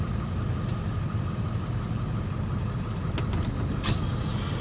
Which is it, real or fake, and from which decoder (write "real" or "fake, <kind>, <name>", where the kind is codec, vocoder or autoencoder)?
real